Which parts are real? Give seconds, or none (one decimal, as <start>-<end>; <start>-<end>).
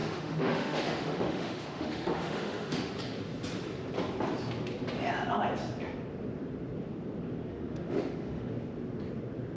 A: 2.9-7.5; 8.5-9.6